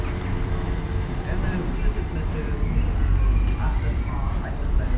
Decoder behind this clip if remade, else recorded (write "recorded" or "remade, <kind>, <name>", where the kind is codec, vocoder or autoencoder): remade, vocoder, BigVGAN v2